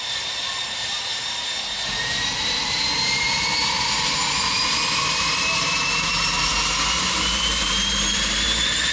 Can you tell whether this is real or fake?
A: fake